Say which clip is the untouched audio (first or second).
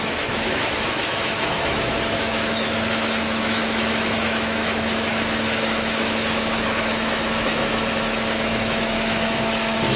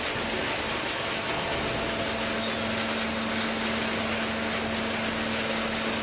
second